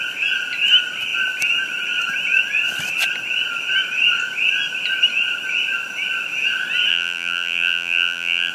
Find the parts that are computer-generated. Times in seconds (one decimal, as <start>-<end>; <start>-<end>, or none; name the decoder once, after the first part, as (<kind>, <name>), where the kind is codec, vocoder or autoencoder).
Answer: 6.9-8.5 (vocoder, BigVGAN v2)